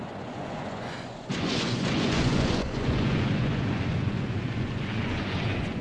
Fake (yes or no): yes